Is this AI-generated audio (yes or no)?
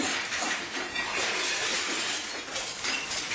yes